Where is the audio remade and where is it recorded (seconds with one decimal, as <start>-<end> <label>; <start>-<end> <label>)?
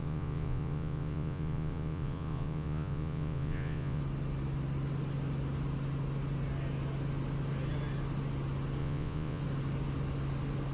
0.0-4.0 remade; 4.0-8.8 recorded; 8.8-9.4 remade; 9.4-10.7 recorded